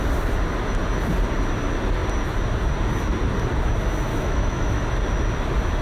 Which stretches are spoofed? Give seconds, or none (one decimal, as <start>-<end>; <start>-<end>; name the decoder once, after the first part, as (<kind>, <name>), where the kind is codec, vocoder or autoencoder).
4.1-4.9 (autoencoder, DAC-VAE)